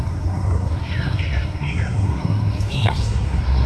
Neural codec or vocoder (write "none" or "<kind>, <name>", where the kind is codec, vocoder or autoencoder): codec, SNAC